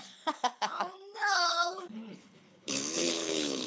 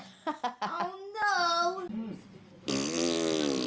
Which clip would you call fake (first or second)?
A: first